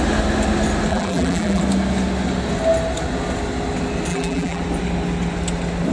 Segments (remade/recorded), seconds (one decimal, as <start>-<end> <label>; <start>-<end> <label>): 0.0-0.9 recorded; 0.9-1.6 remade; 1.6-4.1 recorded; 4.1-4.6 remade; 4.6-5.9 recorded